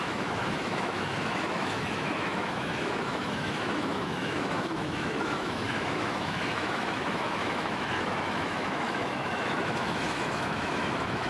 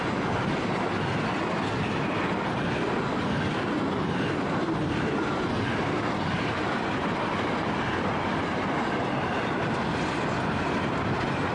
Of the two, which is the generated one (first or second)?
first